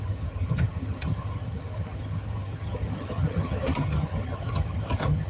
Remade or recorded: remade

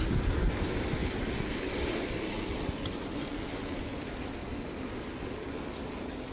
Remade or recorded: recorded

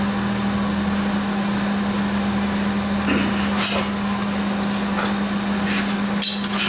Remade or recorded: recorded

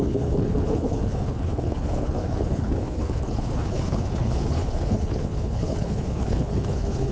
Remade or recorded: remade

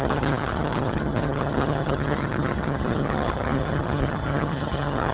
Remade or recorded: remade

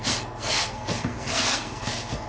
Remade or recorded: remade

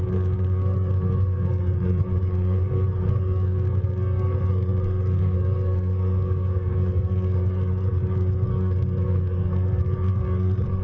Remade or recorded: remade